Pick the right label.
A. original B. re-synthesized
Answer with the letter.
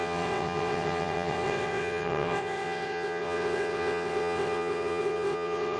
B